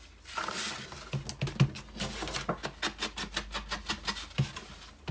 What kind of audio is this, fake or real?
real